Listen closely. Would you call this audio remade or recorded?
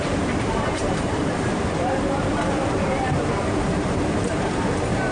remade